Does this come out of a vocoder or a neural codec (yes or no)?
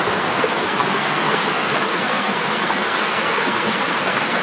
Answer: yes